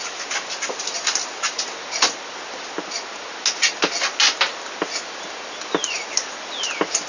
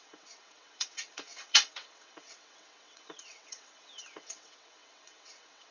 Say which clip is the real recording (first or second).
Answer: first